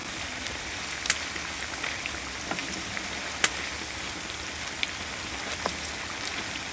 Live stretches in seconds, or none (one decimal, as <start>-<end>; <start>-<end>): 0.0-6.7